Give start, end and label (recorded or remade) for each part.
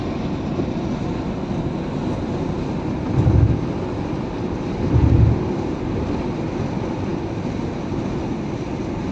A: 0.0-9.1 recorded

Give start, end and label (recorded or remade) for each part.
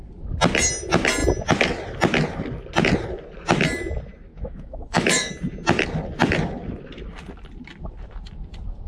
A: 0.0-4.3 recorded; 4.3-5.3 remade; 5.3-8.9 recorded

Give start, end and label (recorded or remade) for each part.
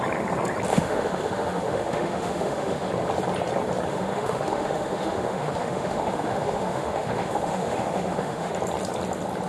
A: 0.0-0.7 recorded; 0.7-2.9 remade; 2.9-3.9 recorded; 3.9-8.5 remade; 8.5-9.5 recorded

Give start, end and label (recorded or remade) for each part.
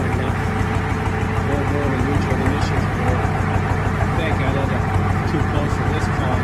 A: 0.0-6.4 recorded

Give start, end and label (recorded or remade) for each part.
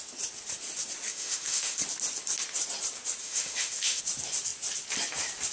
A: 0.0-1.1 recorded; 1.1-1.8 remade; 1.8-3.2 recorded; 3.2-4.0 remade; 4.0-5.5 recorded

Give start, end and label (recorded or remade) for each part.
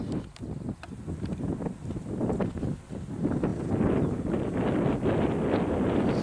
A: 0.0-6.2 recorded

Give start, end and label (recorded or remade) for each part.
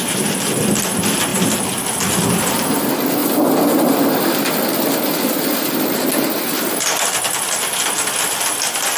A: 0.0-9.0 recorded